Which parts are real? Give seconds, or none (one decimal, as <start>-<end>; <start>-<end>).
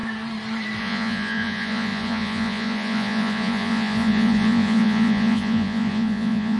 0.0-0.8